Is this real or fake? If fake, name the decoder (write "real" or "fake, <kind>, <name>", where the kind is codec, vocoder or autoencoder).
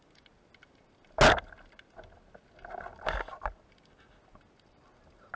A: real